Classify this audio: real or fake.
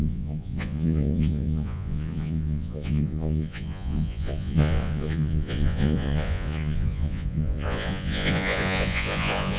fake